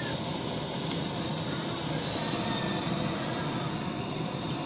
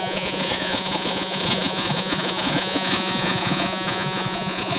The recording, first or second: first